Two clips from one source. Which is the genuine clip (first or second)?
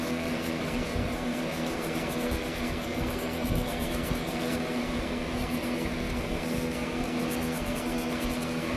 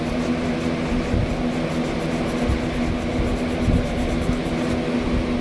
second